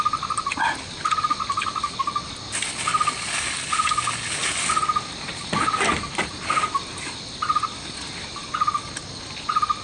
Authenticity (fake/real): real